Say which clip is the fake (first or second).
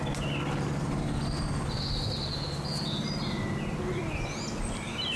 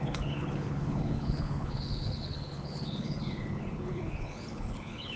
second